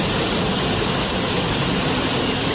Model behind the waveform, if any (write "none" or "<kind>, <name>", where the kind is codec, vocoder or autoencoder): vocoder, BigVGAN v2